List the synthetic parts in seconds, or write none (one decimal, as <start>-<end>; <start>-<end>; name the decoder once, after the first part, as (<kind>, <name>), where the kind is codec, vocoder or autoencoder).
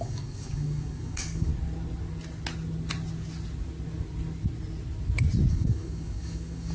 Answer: 0.0-1.5 (codec, DAC); 5.5-6.7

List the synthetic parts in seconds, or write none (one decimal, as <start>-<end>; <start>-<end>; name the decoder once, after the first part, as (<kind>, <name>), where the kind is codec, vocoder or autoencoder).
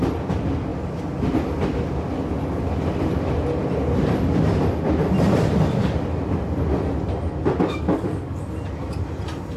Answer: 7.4-8.4 (codec, DAC)